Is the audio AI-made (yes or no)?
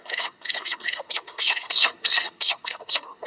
yes